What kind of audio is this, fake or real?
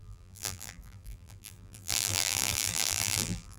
fake